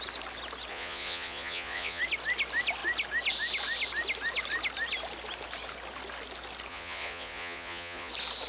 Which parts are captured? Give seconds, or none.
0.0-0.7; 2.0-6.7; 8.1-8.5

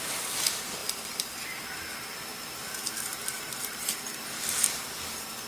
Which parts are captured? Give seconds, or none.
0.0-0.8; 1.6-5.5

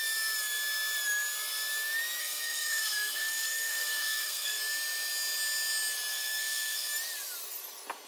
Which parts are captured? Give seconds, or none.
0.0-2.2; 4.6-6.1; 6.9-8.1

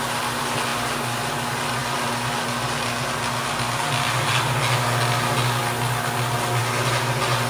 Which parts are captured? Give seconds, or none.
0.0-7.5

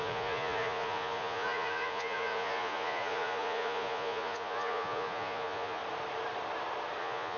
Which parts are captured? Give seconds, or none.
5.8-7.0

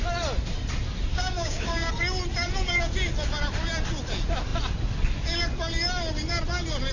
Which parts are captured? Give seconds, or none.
0.0-1.1; 1.9-6.9

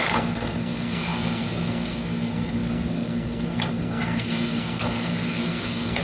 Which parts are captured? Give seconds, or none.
none